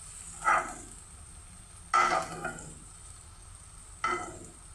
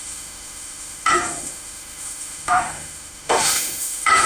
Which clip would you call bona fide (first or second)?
first